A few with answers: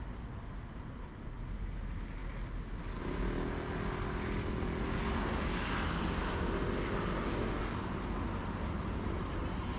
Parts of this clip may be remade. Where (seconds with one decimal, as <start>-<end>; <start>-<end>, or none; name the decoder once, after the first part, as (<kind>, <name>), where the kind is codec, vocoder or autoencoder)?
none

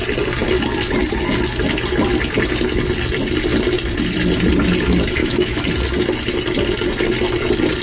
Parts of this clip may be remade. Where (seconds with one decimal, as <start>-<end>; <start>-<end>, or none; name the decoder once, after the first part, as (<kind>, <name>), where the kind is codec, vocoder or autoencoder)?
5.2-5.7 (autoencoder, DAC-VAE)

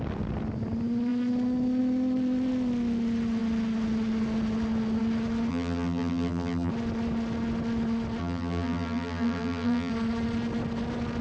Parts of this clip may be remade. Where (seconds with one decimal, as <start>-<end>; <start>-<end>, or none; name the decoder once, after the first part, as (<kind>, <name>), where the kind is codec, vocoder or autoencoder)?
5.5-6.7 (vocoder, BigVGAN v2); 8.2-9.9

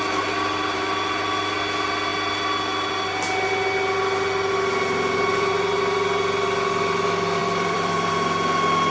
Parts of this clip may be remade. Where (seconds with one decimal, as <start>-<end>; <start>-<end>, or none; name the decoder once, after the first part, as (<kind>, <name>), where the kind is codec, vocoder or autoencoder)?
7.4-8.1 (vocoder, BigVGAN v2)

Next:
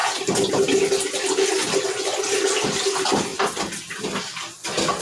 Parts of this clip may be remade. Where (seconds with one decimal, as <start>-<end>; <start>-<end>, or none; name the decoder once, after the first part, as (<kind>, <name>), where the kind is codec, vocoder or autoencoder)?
none

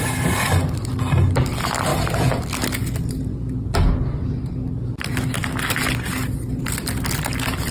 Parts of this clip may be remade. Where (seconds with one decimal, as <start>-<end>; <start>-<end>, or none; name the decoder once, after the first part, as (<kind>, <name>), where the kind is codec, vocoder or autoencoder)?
none

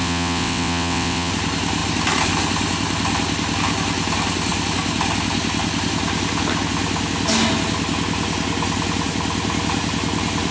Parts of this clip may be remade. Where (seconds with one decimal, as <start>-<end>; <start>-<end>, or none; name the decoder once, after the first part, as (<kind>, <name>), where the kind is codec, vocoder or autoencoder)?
0.0-1.3 (vocoder, WaveNeXt)

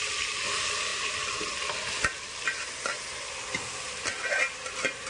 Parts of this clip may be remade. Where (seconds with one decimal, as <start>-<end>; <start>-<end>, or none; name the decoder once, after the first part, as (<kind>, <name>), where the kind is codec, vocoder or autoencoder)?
none